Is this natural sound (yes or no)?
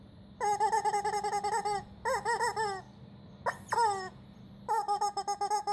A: yes